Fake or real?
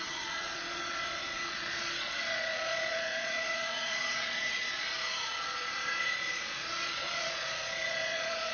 fake